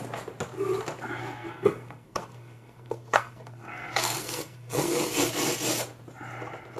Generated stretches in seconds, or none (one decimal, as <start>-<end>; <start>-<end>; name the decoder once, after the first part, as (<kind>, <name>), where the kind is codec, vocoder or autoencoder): 1.2-5.3 (codec, SNAC)